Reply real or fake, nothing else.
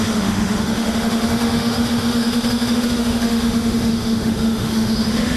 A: fake